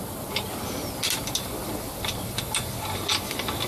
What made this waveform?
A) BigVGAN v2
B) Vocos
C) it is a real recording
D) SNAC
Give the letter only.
A